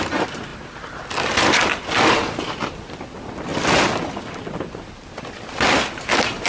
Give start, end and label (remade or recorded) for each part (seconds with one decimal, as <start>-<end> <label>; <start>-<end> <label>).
0.0-6.5 recorded